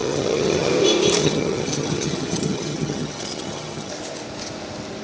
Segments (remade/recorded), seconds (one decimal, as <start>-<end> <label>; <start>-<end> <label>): 0.0-0.7 remade; 0.7-1.2 recorded; 1.2-3.9 remade; 3.9-5.0 recorded